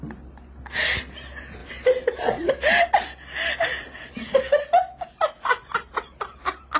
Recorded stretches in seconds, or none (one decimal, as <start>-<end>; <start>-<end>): 0.0-1.6; 2.5-6.8